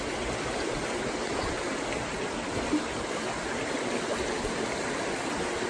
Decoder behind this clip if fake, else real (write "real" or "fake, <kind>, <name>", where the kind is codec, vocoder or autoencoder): real